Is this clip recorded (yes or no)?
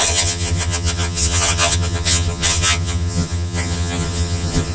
no